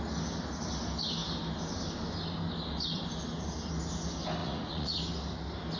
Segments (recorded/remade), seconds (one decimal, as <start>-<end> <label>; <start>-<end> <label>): 0.0-4.4 recorded; 4.4-5.0 remade; 5.0-5.8 recorded